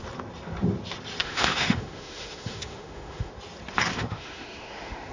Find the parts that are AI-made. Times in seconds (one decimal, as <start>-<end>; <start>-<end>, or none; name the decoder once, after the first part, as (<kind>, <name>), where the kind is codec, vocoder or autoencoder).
1.2-3.3 (autoencoder, DAC-VAE); 3.9-5.1